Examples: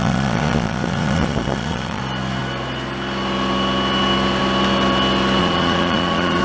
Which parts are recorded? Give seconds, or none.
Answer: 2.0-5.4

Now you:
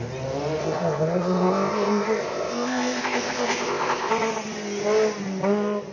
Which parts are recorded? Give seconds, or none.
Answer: 0.0-0.6; 4.1-5.9